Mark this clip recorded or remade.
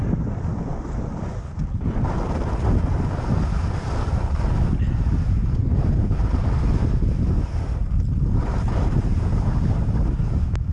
recorded